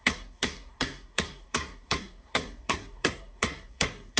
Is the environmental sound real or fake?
fake